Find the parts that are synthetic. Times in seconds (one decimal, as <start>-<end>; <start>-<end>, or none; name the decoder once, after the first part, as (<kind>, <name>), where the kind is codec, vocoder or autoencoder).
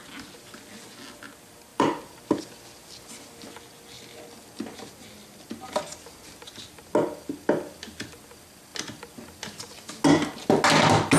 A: 1.7-2.4 (vocoder, BigVGAN v2)